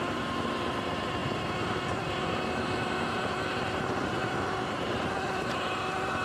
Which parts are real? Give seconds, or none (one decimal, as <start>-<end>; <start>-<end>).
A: 0.0-6.2